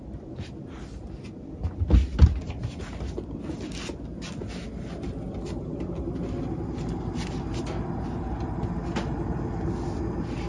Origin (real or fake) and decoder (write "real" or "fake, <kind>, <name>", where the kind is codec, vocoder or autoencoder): real